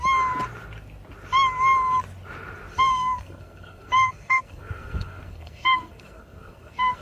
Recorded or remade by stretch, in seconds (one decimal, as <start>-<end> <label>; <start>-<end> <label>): 0.0-2.7 recorded; 2.7-7.0 remade